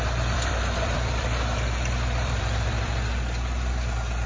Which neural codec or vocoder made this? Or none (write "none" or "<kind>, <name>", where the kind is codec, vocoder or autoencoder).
vocoder, BigVGAN v2